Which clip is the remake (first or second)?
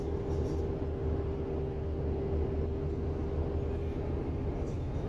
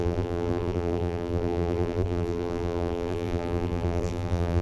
second